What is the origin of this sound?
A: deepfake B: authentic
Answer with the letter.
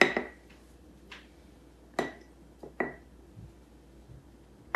B